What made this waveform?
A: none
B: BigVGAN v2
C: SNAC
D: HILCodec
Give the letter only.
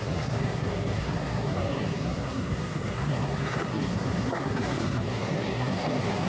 C